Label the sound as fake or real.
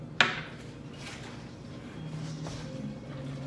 real